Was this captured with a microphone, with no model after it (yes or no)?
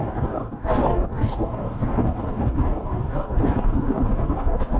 no